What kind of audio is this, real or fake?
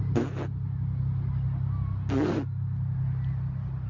real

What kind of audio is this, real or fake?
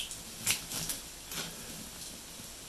real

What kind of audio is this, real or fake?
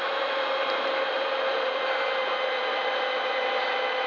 fake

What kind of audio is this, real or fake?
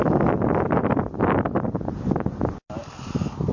real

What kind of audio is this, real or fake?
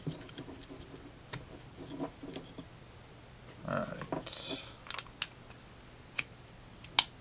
real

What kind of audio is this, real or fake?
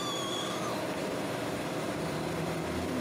fake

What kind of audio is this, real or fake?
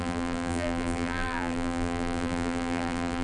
fake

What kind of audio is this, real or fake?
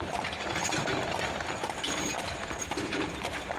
fake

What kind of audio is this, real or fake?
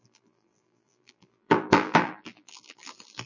fake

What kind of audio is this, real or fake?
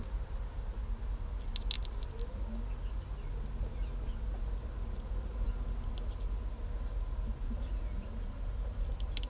real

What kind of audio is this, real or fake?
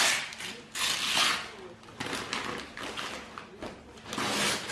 real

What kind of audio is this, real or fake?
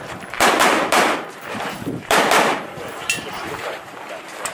fake